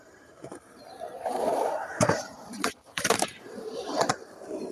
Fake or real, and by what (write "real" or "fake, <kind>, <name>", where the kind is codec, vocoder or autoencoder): fake, vocoder, BigVGAN v2